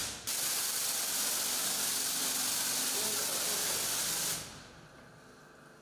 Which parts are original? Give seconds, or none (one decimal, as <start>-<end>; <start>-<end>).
1.1-3.3; 5.1-5.8